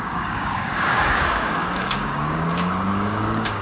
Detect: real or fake fake